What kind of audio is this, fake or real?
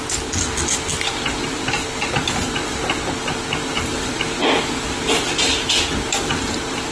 real